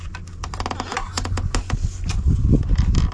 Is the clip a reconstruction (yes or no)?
no